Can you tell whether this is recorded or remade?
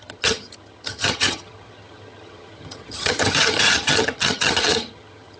remade